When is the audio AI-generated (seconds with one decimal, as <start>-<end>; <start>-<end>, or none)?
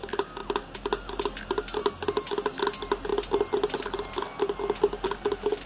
none